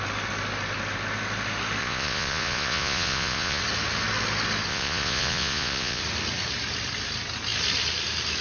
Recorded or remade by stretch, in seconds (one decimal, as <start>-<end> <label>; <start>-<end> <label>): 0.0-1.8 recorded; 1.8-3.6 remade; 3.6-4.7 recorded; 4.7-6.0 remade; 6.0-8.4 recorded